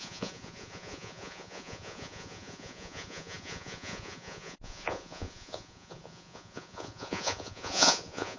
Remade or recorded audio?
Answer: remade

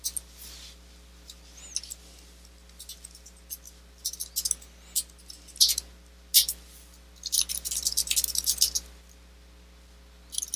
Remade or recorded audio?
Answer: recorded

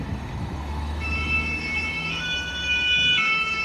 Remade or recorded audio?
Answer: remade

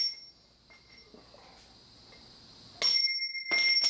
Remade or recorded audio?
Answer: recorded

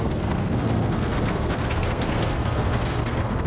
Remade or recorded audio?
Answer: remade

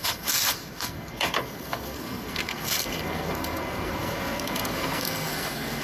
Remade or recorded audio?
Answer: remade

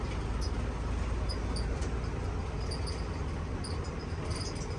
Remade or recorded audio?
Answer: recorded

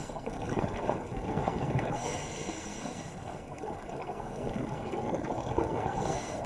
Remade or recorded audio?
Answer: remade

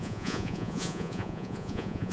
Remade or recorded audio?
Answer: remade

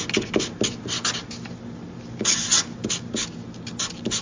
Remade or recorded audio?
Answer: recorded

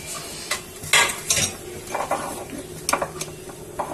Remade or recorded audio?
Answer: recorded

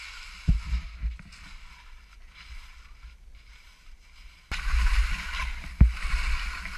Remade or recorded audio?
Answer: recorded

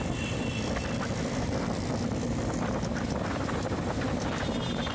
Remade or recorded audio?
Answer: recorded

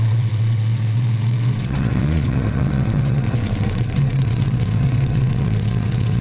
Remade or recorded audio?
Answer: remade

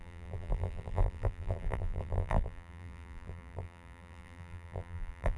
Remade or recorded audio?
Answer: remade